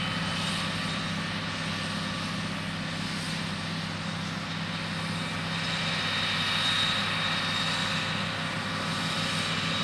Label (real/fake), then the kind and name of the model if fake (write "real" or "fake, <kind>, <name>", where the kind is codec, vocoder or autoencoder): real